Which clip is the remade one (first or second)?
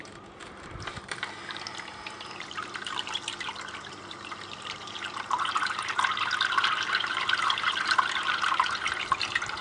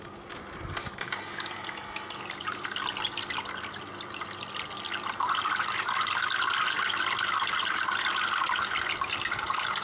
first